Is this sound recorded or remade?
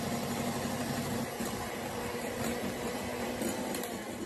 recorded